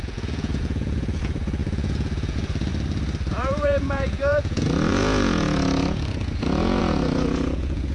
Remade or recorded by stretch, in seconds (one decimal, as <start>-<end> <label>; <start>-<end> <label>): 0.0-2.7 remade; 2.7-3.3 recorded; 3.3-7.9 remade